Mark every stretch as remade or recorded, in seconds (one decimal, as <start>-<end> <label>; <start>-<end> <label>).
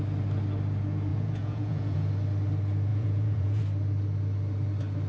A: 0.0-1.1 recorded; 1.1-2.1 remade; 2.1-2.9 recorded; 2.9-3.6 remade; 3.6-5.1 recorded